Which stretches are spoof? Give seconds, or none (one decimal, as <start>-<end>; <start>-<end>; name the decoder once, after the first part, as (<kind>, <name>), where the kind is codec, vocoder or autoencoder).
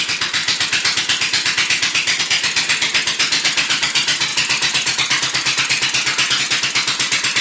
none